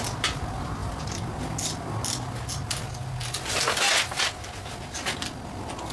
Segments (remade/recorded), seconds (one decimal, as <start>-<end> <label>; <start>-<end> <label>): 0.0-5.9 recorded